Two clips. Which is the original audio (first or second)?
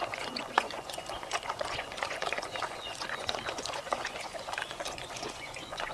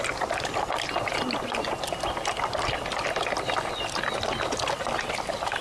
second